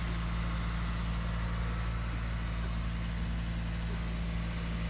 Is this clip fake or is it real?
real